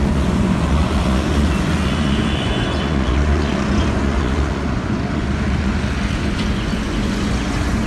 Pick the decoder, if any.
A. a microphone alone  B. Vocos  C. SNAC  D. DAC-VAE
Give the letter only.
B